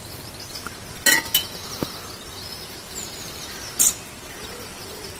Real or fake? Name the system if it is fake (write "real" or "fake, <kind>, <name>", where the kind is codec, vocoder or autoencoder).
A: real